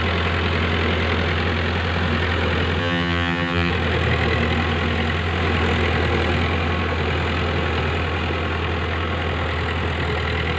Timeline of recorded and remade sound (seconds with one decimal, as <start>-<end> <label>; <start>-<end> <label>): 0.0-2.8 recorded; 2.8-3.7 remade; 3.7-10.6 recorded